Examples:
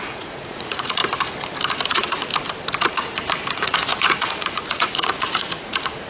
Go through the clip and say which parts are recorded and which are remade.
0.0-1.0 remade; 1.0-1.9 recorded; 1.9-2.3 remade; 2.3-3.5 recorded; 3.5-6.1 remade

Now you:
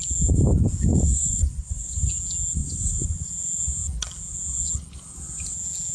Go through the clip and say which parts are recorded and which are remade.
0.0-0.9 recorded; 0.9-2.1 remade; 2.1-2.6 recorded; 2.6-3.3 remade; 3.3-5.9 recorded

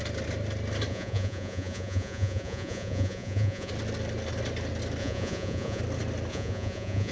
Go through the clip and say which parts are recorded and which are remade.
0.0-0.9 recorded; 0.9-3.7 remade; 3.7-5.0 recorded; 5.0-5.8 remade; 5.8-6.3 recorded; 6.3-7.1 remade

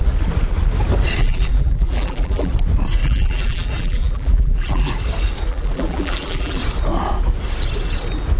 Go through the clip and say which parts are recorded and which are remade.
0.0-1.2 recorded; 1.2-2.5 remade; 2.5-3.0 recorded; 3.0-4.9 remade; 4.9-5.5 recorded; 5.5-6.6 remade; 6.6-8.4 recorded

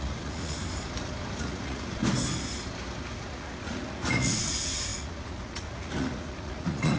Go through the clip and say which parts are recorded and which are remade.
0.0-0.6 remade; 0.6-1.4 recorded; 1.4-2.0 remade; 2.0-3.3 recorded; 3.3-7.0 remade

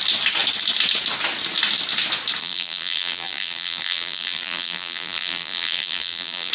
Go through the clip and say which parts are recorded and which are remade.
0.0-2.4 recorded; 2.4-6.5 remade